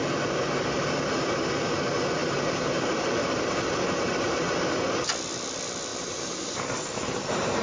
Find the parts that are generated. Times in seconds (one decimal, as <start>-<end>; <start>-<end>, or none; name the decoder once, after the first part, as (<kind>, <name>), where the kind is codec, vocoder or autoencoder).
2.2-4.5 (vocoder, BigVGAN v2); 5.9-7.6